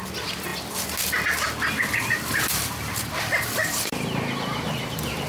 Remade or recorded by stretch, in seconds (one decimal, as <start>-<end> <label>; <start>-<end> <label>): 0.0-5.3 remade